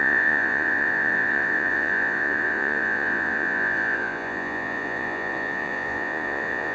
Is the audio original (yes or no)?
no